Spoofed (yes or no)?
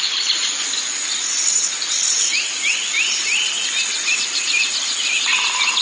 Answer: yes